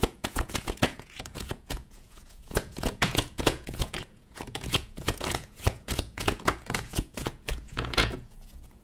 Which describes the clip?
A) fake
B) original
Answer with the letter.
A